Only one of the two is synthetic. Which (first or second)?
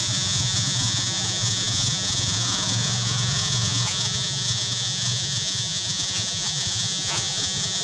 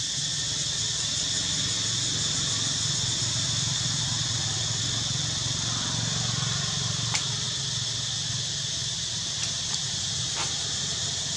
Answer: first